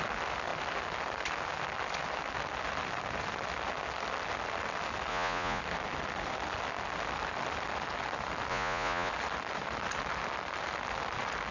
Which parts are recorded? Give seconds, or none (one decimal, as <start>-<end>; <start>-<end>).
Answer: 0.0-5.1; 5.6-8.5; 9.1-11.5